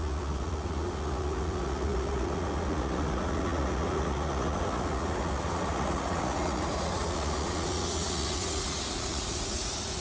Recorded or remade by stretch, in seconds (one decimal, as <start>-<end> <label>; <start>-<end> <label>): 0.0-10.0 remade